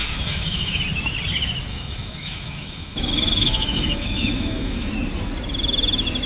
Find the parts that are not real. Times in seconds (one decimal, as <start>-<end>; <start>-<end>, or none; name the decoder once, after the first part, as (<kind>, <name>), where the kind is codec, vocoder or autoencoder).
0.0-0.8 (autoencoder, DAC-VAE); 1.7-4.9